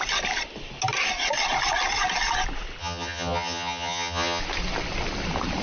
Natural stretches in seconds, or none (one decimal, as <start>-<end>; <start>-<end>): 0.0-2.8; 4.4-5.6